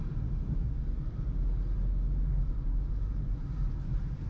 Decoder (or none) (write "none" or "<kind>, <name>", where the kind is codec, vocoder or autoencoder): none